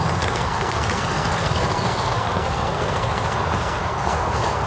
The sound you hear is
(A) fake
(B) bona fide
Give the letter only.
A